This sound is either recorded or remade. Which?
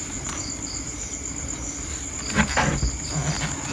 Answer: recorded